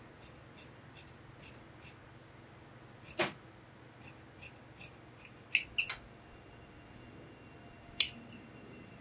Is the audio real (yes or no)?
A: yes